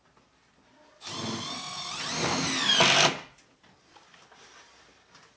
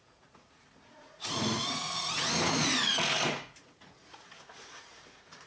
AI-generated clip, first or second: second